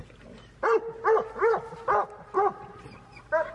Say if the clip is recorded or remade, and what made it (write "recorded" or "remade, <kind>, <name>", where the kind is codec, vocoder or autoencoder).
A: recorded